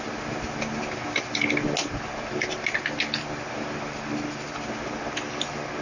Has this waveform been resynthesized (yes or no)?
no